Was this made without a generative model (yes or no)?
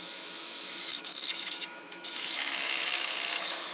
no